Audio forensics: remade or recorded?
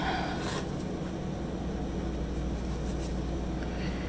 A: recorded